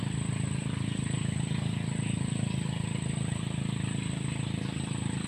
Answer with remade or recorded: recorded